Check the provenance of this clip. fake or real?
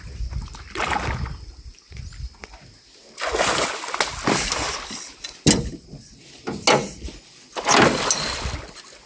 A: real